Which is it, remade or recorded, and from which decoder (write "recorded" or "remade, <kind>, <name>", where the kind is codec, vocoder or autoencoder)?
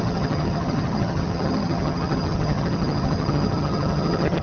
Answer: remade, vocoder, HiFi-GAN